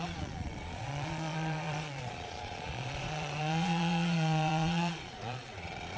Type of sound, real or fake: fake